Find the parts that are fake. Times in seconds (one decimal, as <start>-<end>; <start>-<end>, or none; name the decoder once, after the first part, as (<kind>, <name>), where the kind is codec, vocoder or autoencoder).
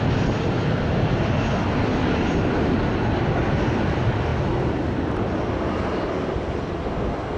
none